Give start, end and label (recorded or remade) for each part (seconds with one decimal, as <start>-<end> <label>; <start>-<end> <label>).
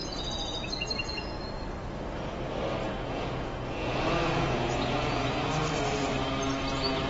0.0-1.4 remade; 1.4-2.8 recorded; 2.8-5.3 remade; 5.3-7.1 recorded